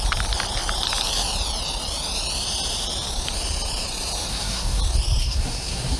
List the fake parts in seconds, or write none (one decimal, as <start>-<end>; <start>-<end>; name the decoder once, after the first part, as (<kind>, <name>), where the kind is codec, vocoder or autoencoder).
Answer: 4.3-4.8 (codec, SNAC); 5.2-6.0